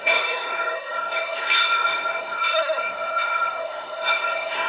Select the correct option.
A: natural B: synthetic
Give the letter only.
B